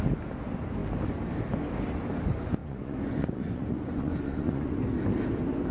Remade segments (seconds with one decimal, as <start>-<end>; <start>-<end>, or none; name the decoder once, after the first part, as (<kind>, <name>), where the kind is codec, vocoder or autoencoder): 2.6-4.8 (vocoder, Vocos)